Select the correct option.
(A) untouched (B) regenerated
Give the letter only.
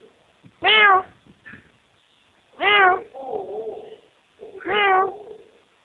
A